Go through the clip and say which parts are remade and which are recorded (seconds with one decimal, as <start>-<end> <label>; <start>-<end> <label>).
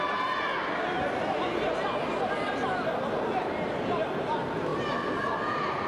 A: 0.0-5.9 recorded